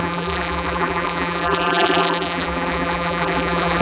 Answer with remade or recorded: remade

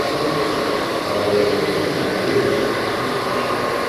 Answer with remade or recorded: recorded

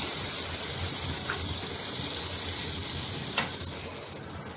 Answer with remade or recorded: recorded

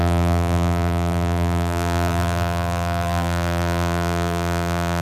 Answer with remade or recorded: remade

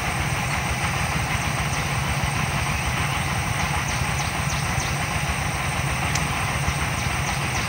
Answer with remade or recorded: recorded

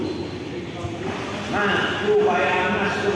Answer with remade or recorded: recorded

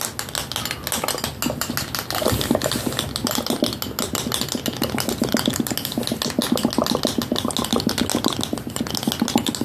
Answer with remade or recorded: recorded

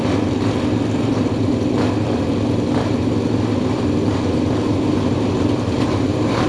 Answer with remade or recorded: recorded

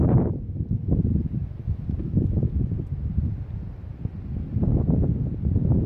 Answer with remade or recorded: recorded